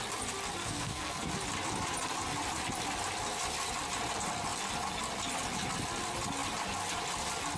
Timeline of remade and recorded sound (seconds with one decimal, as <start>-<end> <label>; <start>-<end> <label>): 0.0-0.6 recorded; 0.6-1.3 remade; 1.3-7.6 recorded